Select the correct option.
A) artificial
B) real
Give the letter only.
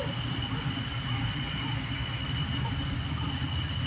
B